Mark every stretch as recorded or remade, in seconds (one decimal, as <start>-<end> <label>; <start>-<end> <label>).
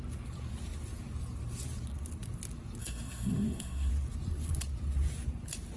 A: 0.0-2.8 recorded; 2.8-3.9 remade; 3.9-5.8 recorded